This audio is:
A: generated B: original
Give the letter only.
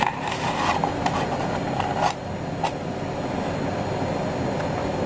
B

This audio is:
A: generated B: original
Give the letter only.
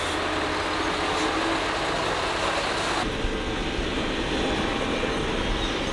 B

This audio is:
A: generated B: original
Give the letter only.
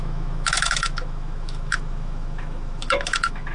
A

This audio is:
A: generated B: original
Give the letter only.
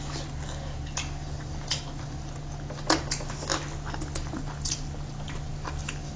B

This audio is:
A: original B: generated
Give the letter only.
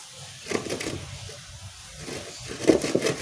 A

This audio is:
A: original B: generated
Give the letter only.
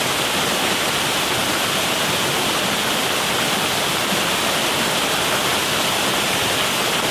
A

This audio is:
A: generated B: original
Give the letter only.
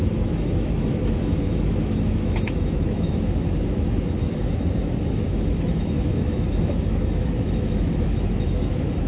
A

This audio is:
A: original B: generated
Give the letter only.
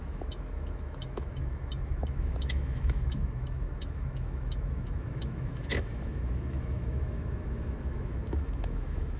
B